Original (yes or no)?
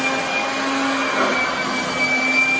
yes